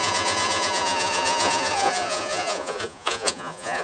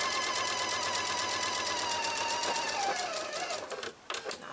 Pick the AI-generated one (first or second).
first